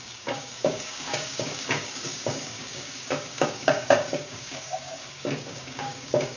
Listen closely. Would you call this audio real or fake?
fake